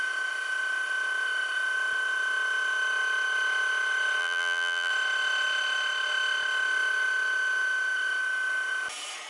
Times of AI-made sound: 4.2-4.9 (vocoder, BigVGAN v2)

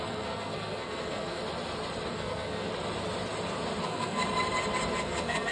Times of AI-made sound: 0.0-1.4 (codec, SNAC); 2.1-2.7; 3.8-4.2; 5.0-5.5

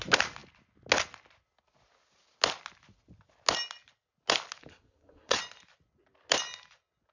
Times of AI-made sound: 4.7-5.4 (codec, SNAC)

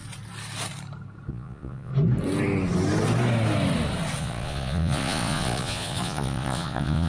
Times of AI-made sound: 1.3-1.9 (vocoder, Vocos); 4.2-7.1

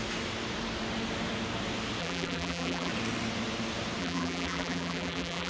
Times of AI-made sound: 2.0-2.9 (vocoder, BigVGAN v2); 4.0-5.5

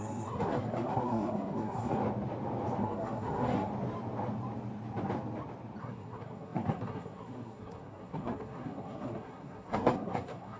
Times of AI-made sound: 0.0-2.0 (codec, SNAC); 2.8-3.7; 5.8-10.6

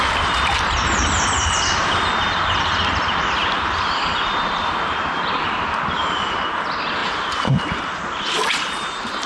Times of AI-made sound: none